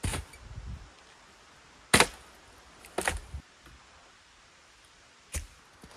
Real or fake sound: real